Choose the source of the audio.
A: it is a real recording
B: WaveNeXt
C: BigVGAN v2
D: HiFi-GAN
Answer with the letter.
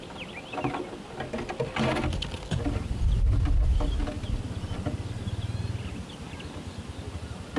A